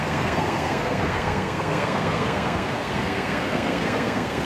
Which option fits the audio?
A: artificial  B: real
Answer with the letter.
A